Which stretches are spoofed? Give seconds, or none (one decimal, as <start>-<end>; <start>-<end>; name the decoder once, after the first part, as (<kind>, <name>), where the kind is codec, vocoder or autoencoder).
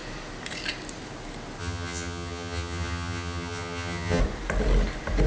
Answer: 1.6-4.2 (vocoder, HiFi-GAN)